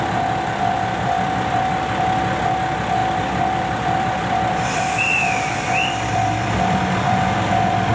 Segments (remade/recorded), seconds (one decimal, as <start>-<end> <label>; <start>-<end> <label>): 0.0-3.0 recorded; 3.0-7.9 remade